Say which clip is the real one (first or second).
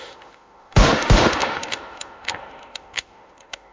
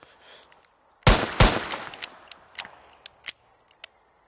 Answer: second